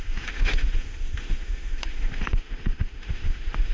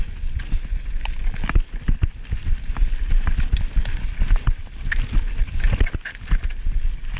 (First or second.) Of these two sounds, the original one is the second